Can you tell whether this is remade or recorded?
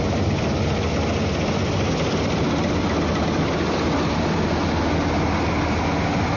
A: recorded